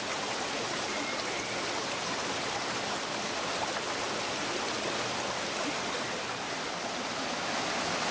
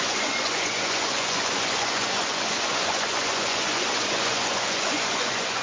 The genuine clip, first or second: first